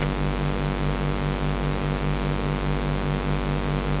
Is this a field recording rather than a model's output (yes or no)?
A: yes